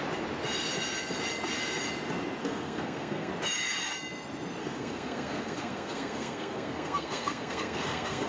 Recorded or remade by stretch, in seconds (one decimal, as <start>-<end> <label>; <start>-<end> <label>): 0.0-2.4 recorded; 2.4-3.3 remade; 3.3-4.6 recorded; 4.6-8.3 remade